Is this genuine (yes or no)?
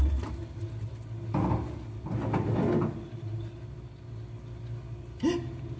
yes